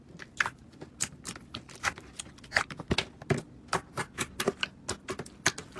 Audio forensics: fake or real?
real